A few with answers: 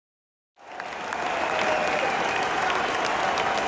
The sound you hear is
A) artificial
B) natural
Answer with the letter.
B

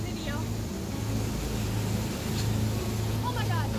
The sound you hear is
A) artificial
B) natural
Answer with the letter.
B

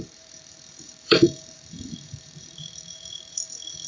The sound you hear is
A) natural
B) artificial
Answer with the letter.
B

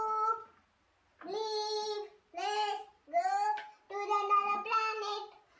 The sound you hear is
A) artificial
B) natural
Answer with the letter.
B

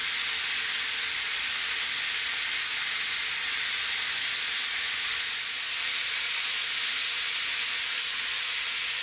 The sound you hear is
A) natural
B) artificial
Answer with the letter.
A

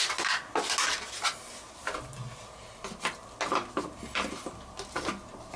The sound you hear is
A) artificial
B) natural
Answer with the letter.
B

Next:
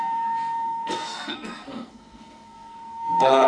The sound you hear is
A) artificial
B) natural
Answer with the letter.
A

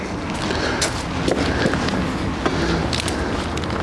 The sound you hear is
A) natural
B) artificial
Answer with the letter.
A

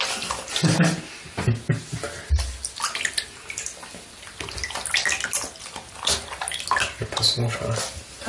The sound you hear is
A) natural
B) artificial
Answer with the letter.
A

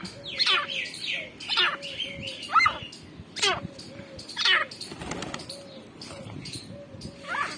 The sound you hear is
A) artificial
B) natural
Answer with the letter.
B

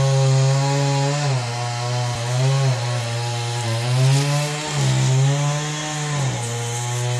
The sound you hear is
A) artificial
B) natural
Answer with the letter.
B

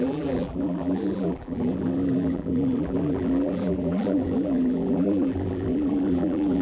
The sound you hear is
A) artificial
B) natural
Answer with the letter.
A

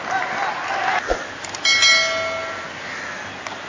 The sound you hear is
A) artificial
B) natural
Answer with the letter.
B